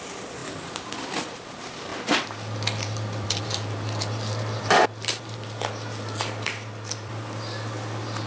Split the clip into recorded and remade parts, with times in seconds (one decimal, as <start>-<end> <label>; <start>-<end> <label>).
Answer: 0.0-8.3 recorded

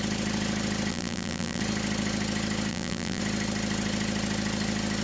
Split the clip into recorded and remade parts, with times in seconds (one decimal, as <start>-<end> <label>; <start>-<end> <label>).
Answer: 0.0-0.9 recorded; 0.9-1.6 remade; 1.6-2.7 recorded; 2.7-3.2 remade; 3.2-5.0 recorded

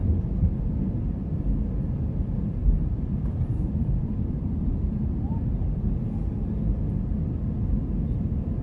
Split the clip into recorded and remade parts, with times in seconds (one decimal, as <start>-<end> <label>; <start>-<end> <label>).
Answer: 0.0-0.7 remade; 0.7-2.6 recorded; 2.6-5.8 remade; 5.8-8.6 recorded

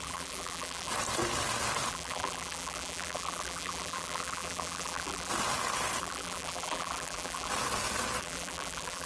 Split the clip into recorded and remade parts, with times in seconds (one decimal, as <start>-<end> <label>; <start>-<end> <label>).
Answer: 0.0-0.9 remade; 0.9-1.9 recorded; 1.9-5.3 remade; 5.3-6.0 recorded; 6.0-7.5 remade; 7.5-8.2 recorded; 8.2-9.1 remade